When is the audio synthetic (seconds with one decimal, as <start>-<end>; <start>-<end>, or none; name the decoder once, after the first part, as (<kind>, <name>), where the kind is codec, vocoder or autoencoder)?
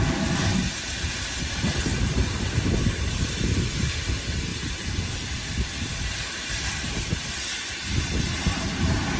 1.9-3.8 (vocoder, BigVGAN v2); 4.5-8.6